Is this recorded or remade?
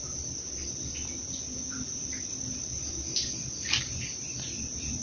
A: recorded